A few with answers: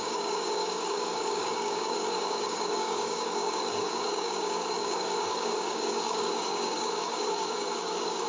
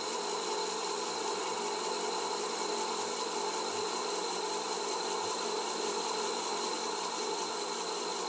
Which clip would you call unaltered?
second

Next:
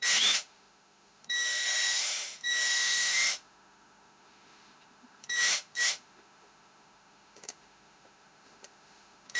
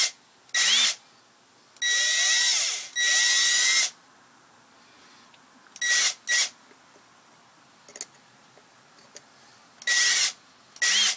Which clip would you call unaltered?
second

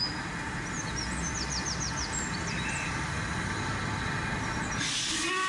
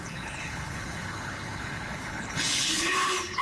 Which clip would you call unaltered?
first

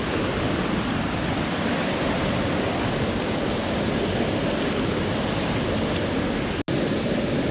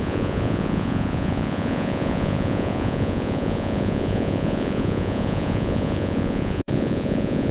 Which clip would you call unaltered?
first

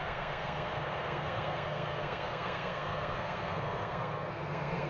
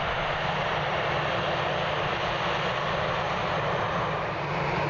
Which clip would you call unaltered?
second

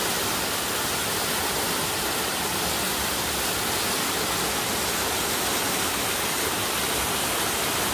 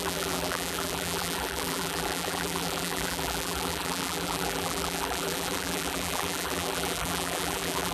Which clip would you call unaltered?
first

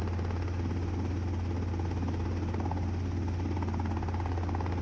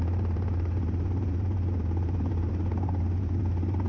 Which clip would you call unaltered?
first